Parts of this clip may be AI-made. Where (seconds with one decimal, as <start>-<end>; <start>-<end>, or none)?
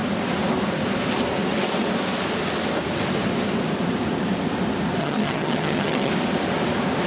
5.0-6.1